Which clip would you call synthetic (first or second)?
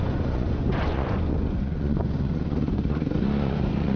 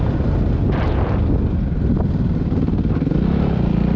first